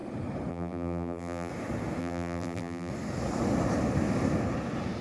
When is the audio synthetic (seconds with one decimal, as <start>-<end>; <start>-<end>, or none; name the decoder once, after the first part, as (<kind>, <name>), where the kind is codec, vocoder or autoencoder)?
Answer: 0.5-1.5 (vocoder, BigVGAN v2); 2.0-2.9